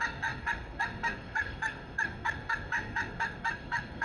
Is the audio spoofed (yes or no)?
yes